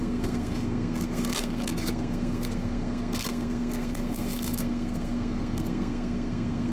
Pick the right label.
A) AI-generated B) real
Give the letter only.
A